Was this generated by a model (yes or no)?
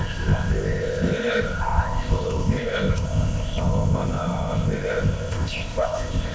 yes